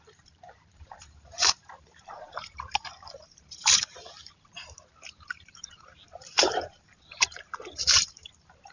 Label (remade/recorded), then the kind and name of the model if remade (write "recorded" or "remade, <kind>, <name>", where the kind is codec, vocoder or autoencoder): remade, vocoder, BigVGAN v2